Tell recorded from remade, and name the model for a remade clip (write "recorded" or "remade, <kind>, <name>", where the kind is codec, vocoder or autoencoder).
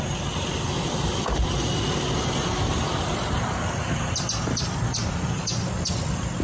recorded